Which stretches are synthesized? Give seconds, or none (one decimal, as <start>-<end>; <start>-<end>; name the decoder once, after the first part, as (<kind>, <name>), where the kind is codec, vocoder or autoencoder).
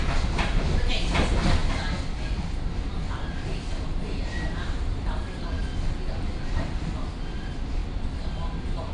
3.7-5.6 (vocoder, BigVGAN v2)